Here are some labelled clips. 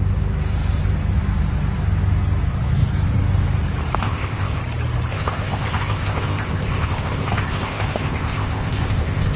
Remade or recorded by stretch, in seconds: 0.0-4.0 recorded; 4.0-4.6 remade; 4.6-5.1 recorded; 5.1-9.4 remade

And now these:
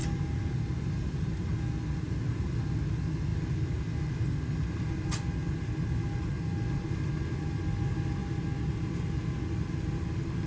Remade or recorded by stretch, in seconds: 0.0-10.5 recorded

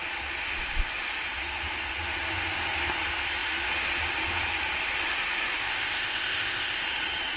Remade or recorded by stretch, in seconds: 0.0-5.6 recorded; 5.6-6.8 remade; 6.8-7.4 recorded

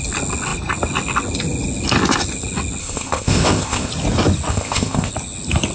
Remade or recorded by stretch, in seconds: 0.0-2.8 recorded; 2.8-3.9 remade; 3.9-4.5 recorded; 4.5-5.1 remade; 5.1-5.7 recorded

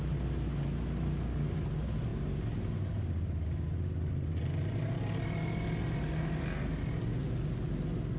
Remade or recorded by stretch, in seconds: 0.0-8.2 recorded

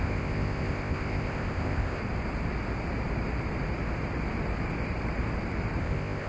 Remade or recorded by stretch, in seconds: 0.0-2.0 remade; 2.0-5.8 recorded; 5.8-6.3 remade

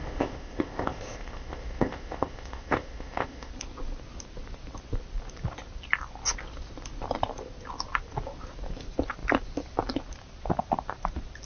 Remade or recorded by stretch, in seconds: 0.0-3.5 remade; 3.5-11.5 recorded